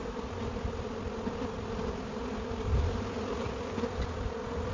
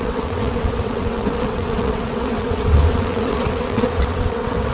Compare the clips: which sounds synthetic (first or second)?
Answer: second